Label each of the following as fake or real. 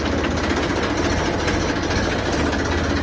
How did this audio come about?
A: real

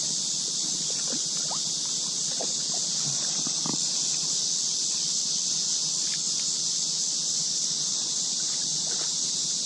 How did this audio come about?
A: real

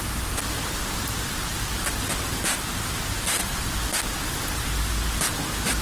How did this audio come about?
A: real